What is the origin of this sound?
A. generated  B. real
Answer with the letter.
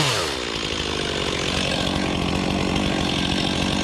B